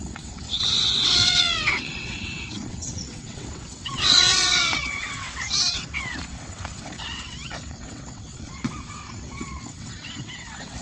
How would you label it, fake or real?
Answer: fake